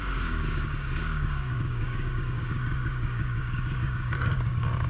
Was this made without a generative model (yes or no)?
no